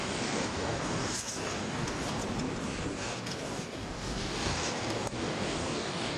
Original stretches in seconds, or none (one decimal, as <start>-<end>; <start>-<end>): 2.2-2.8